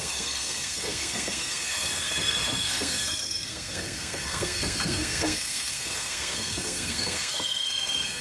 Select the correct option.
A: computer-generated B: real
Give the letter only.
A